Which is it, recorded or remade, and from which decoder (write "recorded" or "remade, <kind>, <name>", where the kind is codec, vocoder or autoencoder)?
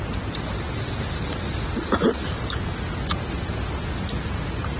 recorded